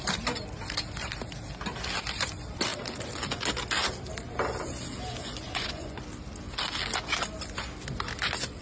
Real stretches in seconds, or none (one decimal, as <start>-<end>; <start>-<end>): 0.0-5.2; 6.0-8.6